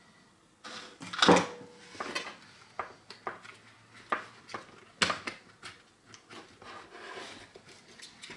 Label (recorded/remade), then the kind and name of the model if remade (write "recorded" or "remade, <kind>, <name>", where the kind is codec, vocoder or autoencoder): recorded